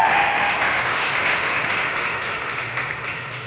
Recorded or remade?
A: remade